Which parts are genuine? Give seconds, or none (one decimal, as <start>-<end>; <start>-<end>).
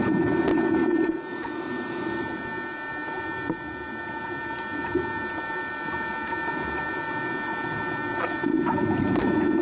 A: 0.0-9.6